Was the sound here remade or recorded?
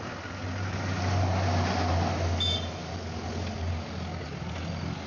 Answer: recorded